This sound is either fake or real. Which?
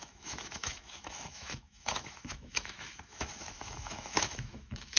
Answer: fake